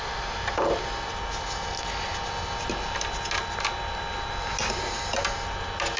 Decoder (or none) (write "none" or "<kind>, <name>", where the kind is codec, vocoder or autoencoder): none